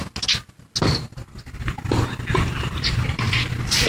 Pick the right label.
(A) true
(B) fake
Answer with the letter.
A